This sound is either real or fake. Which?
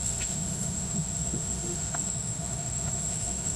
fake